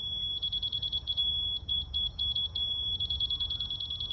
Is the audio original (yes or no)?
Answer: no